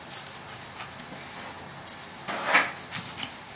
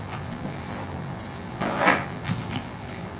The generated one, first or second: second